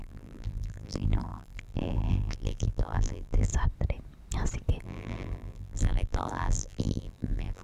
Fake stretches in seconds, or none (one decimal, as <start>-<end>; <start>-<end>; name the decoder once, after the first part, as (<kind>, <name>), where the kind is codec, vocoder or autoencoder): 0.0-3.5 (vocoder, BigVGAN v2); 4.8-7.6